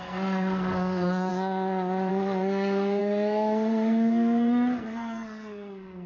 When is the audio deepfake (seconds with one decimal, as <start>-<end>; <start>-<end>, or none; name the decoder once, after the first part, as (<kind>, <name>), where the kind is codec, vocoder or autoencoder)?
0.0-1.3 (codec, SNAC); 2.1-6.1